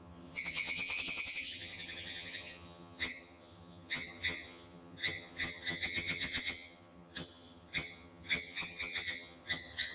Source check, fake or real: fake